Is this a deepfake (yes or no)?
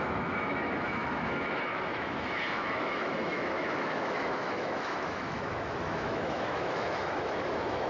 yes